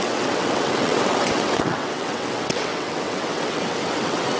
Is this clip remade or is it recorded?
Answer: remade